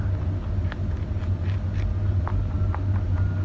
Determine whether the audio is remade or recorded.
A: recorded